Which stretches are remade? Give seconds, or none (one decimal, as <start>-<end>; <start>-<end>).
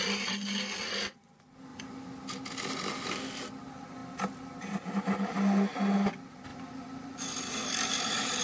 6.5-8.4